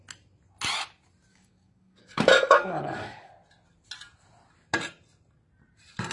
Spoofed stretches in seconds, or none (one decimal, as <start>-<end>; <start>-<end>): 1.3-3.3